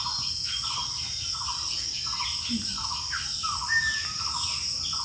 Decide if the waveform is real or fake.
real